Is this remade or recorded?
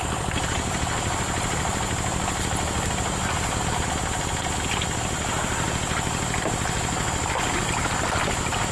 recorded